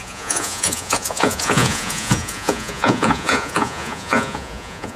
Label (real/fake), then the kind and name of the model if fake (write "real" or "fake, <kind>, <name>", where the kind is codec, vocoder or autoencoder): fake, vocoder, Vocos